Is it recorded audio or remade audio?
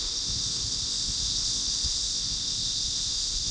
remade